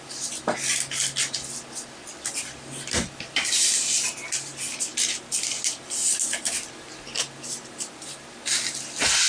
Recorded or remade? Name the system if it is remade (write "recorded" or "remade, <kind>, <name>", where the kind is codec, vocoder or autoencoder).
recorded